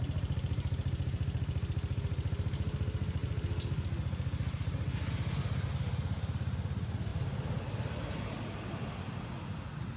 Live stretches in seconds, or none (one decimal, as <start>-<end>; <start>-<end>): 0.0-10.0